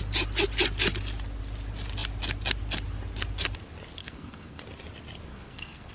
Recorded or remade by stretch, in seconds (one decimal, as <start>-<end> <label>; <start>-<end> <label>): 0.0-4.0 recorded; 4.0-4.6 remade; 4.6-5.3 recorded; 5.3-5.9 remade